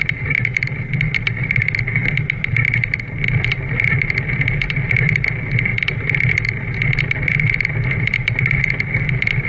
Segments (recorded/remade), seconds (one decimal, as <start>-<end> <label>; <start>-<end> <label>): 0.0-9.5 recorded